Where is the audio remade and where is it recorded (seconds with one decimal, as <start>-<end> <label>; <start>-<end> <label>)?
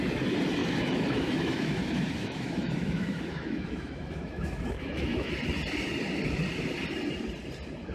0.0-0.6 recorded; 0.6-5.3 remade; 5.3-7.9 recorded